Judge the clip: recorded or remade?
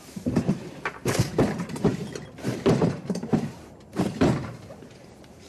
remade